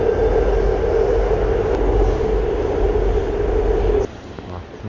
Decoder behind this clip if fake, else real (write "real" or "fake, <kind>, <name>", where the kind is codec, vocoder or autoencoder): real